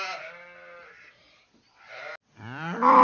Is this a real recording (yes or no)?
yes